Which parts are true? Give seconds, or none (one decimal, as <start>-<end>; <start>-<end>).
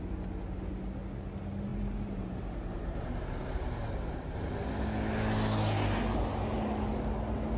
0.0-1.7; 4.5-7.6